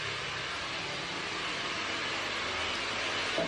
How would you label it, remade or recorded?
recorded